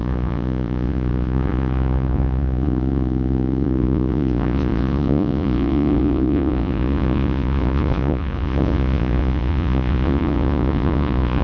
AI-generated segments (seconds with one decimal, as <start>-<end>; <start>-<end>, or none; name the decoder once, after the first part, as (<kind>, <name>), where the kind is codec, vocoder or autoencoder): 0.0-11.4 (vocoder, Vocos)